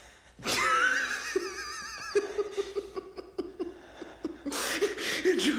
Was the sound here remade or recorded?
recorded